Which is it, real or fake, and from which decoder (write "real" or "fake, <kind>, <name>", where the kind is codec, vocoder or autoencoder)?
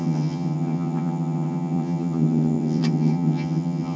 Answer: fake, vocoder, HiFi-GAN